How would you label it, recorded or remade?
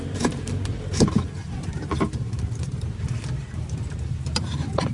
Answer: remade